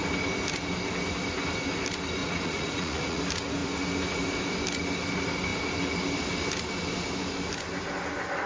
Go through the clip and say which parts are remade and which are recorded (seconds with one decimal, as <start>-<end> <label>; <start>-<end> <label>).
0.0-2.2 recorded; 2.2-3.2 remade; 3.2-8.5 recorded